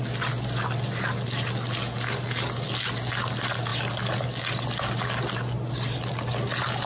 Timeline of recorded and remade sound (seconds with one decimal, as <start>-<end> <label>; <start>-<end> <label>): 0.0-6.9 recorded